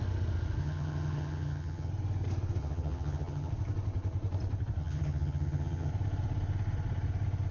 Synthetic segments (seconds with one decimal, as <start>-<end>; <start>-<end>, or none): 0.6-1.9; 2.6-3.5; 4.8-5.9